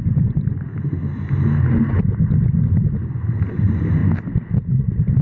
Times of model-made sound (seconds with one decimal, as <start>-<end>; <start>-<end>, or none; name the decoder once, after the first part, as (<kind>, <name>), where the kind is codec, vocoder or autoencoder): 0.0-0.7 (vocoder, BigVGAN v2); 3.6-4.0; 4.6-5.2